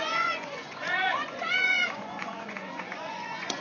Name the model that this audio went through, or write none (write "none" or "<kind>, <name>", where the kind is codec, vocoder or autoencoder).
vocoder, Vocos